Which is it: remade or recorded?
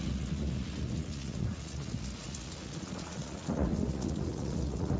remade